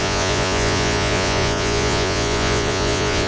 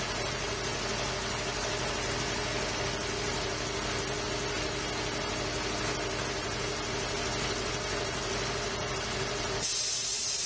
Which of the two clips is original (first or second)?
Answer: second